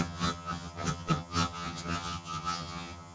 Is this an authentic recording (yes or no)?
no